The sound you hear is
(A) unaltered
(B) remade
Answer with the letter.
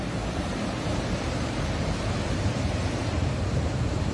B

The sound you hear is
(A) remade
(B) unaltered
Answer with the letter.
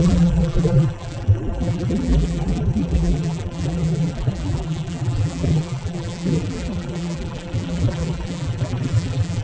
A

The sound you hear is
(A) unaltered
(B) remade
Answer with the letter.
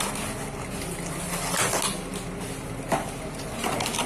A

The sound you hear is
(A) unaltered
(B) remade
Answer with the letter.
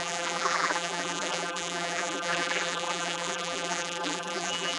B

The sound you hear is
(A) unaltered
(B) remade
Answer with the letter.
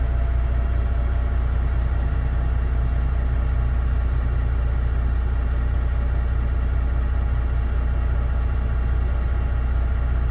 A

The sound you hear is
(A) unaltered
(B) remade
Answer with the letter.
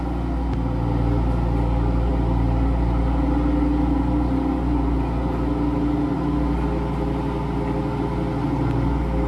A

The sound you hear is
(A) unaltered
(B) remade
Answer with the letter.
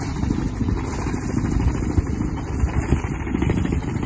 A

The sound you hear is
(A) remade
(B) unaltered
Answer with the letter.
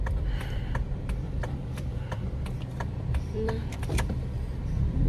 A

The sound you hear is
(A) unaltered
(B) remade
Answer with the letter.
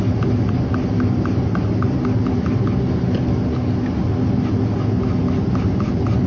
A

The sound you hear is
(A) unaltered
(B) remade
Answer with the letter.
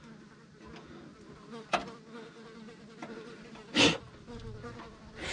A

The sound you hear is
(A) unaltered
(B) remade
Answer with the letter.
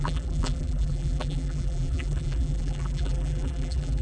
B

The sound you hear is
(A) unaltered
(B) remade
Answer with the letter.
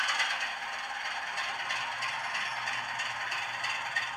B